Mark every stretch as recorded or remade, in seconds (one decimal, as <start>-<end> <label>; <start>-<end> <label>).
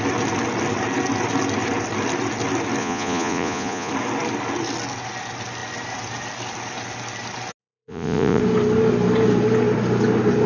0.0-2.8 recorded; 2.8-3.9 remade; 3.9-7.6 recorded; 7.6-8.4 remade; 8.4-10.5 recorded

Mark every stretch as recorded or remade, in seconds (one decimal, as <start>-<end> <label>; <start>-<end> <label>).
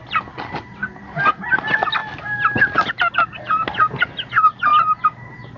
0.0-1.0 remade; 1.0-2.0 recorded; 2.0-2.9 remade; 2.9-5.6 recorded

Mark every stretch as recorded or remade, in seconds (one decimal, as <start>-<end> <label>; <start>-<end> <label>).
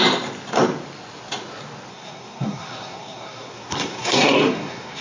0.0-1.9 recorded; 1.9-5.0 remade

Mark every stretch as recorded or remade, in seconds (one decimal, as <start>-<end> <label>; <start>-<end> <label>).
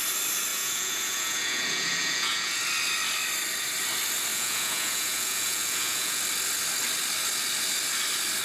0.0-0.5 recorded; 0.5-2.6 remade; 2.6-4.3 recorded; 4.3-6.2 remade; 6.2-8.4 recorded